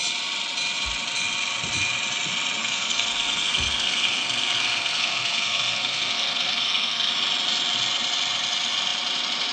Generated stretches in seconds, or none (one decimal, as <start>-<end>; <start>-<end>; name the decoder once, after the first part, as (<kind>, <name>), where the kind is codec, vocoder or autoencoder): 2.6-7.1 (codec, SNAC)